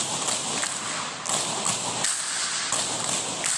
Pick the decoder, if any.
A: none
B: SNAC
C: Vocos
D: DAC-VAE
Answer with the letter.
A